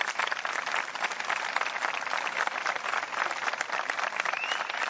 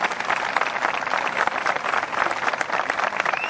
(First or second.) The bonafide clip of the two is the second